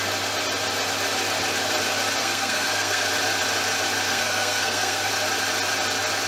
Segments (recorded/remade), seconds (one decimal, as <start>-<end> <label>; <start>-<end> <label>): 0.0-2.2 recorded; 2.2-3.1 remade; 3.1-4.1 recorded; 4.1-5.1 remade; 5.1-6.3 recorded